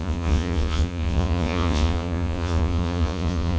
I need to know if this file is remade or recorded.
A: remade